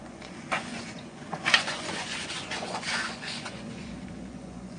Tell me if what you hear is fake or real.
fake